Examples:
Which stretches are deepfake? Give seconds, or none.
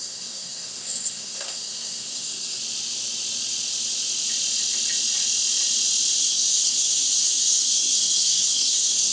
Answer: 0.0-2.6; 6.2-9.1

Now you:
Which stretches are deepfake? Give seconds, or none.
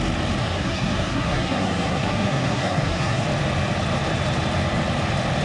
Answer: 0.4-3.2